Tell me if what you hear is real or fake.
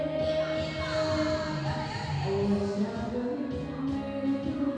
real